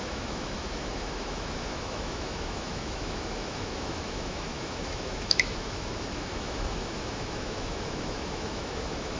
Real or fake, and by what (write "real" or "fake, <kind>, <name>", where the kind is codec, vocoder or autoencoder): fake, autoencoder, DAC-VAE